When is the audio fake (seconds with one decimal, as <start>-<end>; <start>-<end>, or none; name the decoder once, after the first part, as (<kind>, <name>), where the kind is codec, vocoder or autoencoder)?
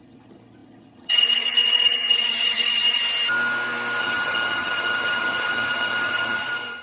0.0-3.0 (vocoder, HiFi-GAN); 4.0-6.8